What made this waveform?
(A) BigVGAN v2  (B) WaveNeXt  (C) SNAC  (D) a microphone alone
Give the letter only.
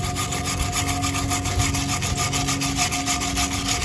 D